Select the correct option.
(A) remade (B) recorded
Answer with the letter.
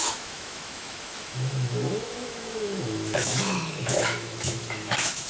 A